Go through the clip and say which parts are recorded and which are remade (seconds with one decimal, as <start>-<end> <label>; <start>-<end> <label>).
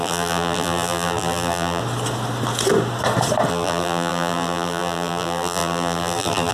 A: 0.0-1.8 remade; 1.8-3.5 recorded; 3.5-6.5 remade